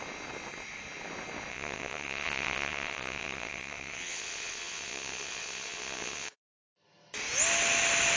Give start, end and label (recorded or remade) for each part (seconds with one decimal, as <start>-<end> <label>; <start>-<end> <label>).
0.0-1.5 recorded; 1.5-6.4 remade; 6.4-8.2 recorded